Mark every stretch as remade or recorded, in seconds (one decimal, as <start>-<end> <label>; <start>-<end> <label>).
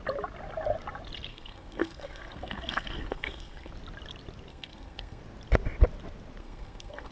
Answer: 0.0-1.3 recorded; 1.3-3.7 remade; 3.7-4.5 recorded; 4.5-5.2 remade; 5.2-6.4 recorded; 6.4-7.1 remade